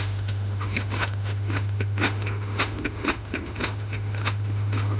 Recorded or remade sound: remade